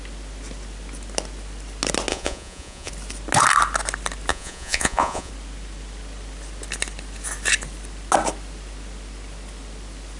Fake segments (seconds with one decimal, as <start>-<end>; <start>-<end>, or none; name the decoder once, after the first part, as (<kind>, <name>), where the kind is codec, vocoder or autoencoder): 2.1-2.9 (vocoder, Vocos); 4.3-5.3